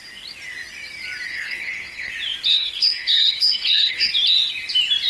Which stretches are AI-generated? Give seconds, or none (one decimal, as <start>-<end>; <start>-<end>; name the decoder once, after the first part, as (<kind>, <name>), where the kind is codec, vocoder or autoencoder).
1.3-2.1 (codec, HILCodec); 2.5-4.1